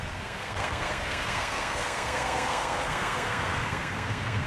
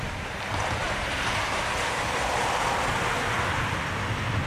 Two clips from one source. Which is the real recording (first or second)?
second